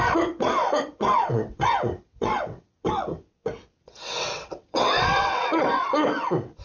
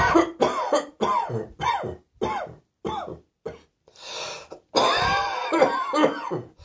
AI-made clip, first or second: first